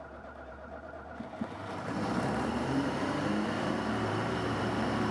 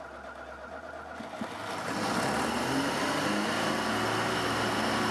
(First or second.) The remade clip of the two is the first